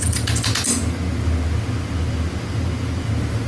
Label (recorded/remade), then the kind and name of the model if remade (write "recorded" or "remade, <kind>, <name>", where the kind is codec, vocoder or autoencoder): recorded